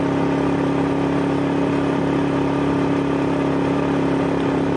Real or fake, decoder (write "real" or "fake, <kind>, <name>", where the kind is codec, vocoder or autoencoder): real